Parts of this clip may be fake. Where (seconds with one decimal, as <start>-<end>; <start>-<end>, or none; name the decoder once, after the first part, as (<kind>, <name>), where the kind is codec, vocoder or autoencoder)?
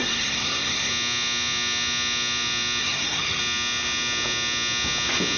0.0-0.9 (codec, SNAC); 2.8-3.4